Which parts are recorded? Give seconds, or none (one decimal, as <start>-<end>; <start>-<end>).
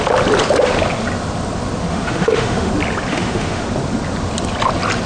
0.0-1.9; 2.7-3.1; 3.6-5.1